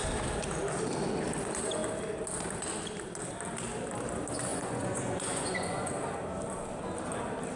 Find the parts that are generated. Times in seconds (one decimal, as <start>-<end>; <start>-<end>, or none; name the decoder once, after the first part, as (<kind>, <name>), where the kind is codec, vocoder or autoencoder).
4.5-5.9 (vocoder, Vocos)

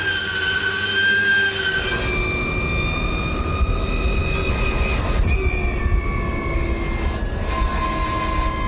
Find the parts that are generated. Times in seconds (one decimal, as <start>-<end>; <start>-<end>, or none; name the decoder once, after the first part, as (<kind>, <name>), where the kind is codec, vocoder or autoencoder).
none

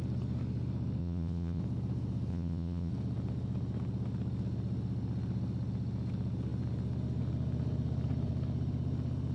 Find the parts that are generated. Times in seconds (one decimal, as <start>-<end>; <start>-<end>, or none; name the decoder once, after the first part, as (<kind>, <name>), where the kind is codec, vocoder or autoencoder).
1.0-1.6 (vocoder, Vocos); 2.3-2.9

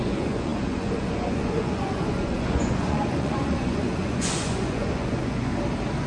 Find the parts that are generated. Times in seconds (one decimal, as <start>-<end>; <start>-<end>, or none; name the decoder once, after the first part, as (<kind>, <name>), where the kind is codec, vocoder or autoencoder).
0.0-5.5 (vocoder, Vocos)